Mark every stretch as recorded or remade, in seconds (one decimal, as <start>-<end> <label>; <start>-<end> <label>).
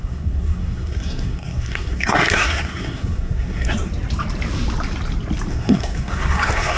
0.0-3.9 remade; 3.9-5.5 recorded; 5.5-6.8 remade